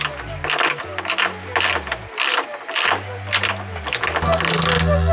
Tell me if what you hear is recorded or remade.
recorded